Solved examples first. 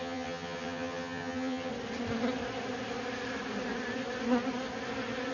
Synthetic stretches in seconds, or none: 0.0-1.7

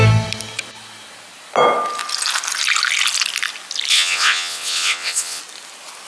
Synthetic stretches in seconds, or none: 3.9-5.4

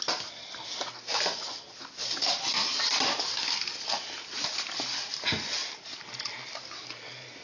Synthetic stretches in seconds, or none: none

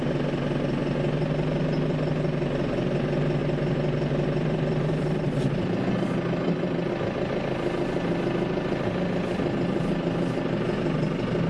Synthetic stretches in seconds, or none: 3.4-6.9